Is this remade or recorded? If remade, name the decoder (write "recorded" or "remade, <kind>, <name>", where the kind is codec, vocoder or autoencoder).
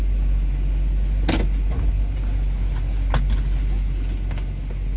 recorded